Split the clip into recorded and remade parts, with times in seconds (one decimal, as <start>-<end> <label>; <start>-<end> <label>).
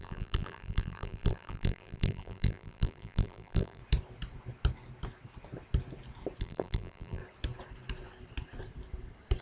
0.0-3.8 remade; 3.8-6.4 recorded; 6.4-7.2 remade; 7.2-9.4 recorded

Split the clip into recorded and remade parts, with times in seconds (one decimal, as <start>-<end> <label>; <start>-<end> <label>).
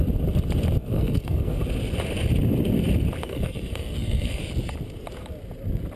0.0-0.8 recorded; 0.8-1.6 remade; 1.6-3.2 recorded; 3.2-4.4 remade; 4.4-6.0 recorded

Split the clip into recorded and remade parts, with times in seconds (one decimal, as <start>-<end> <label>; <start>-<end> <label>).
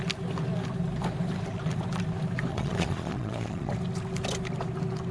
0.0-2.5 recorded; 2.5-3.7 remade; 3.7-5.1 recorded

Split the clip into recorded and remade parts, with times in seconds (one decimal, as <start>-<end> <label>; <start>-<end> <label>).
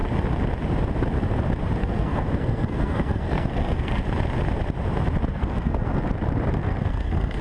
0.0-1.8 recorded; 1.8-4.0 remade; 4.0-5.3 recorded; 5.3-6.0 remade; 6.0-6.6 recorded; 6.6-7.4 remade